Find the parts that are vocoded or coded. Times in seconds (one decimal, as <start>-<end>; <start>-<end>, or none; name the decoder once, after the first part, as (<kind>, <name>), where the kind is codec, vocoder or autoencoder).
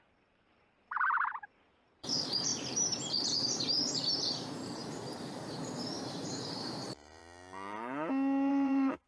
0.0-4.8 (vocoder, BigVGAN v2); 5.3-7.2; 8.5-9.1